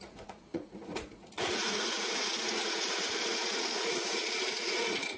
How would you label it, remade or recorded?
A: remade